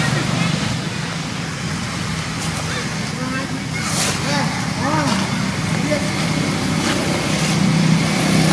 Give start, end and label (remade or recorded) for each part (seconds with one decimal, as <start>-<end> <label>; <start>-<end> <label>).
0.0-8.5 recorded